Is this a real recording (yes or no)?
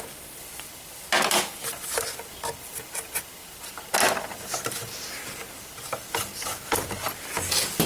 yes